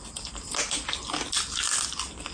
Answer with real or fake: real